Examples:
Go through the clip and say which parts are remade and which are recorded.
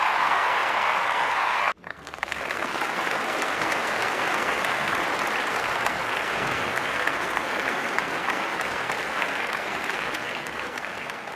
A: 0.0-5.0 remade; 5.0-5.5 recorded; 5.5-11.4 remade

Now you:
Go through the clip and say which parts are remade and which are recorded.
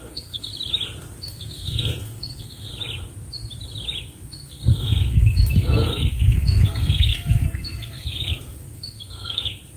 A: 0.0-0.5 remade; 0.5-1.2 recorded; 1.2-2.7 remade; 2.7-4.0 recorded; 4.0-9.8 remade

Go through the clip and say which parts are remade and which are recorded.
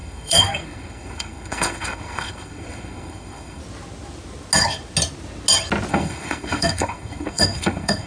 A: 0.0-3.6 remade; 3.6-5.9 recorded; 5.9-8.1 remade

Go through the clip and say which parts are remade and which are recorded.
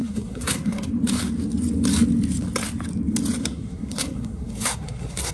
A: 0.0-0.9 remade; 0.9-3.4 recorded; 3.4-5.3 remade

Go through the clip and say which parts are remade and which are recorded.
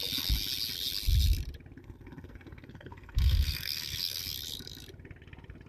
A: 0.0-1.8 recorded; 1.8-4.2 remade; 4.2-5.7 recorded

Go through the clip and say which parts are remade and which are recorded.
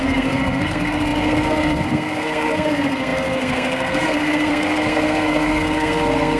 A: 0.0-6.4 remade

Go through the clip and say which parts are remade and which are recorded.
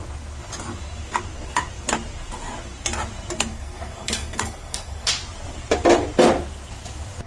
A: 0.0-3.5 recorded; 3.5-5.1 remade; 5.1-7.3 recorded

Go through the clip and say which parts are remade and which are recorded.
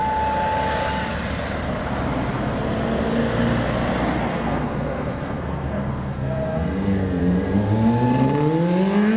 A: 0.0-4.3 recorded; 4.3-7.2 remade; 7.2-9.2 recorded